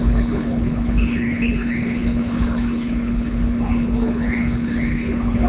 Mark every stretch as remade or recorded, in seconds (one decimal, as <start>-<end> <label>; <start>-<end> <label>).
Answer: 0.0-5.5 remade